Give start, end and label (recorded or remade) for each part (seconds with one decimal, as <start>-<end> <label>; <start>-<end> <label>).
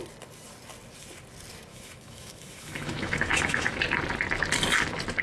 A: 0.0-1.7 recorded; 1.7-3.8 remade; 3.8-5.2 recorded